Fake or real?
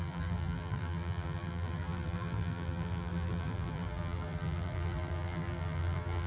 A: fake